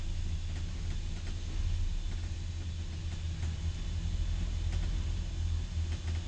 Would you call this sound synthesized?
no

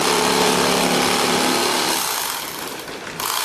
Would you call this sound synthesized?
yes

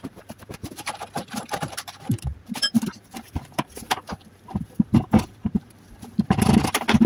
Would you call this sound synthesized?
yes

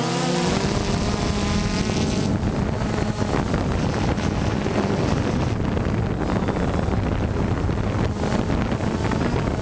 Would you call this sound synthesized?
no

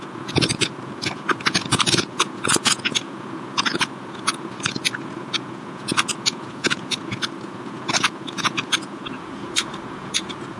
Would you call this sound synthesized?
yes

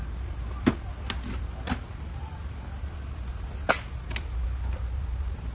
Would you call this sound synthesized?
no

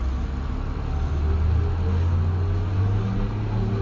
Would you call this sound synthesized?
no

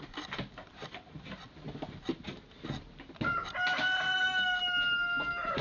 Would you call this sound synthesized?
no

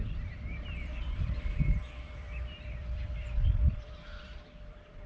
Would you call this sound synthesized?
yes